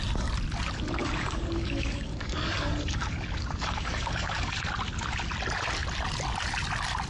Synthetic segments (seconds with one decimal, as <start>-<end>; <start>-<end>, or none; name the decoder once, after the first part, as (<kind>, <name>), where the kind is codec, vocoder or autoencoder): 1.0-4.5 (codec, DAC)